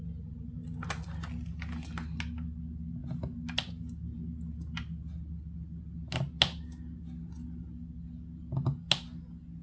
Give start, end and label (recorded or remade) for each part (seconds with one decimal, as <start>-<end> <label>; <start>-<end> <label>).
0.0-9.6 recorded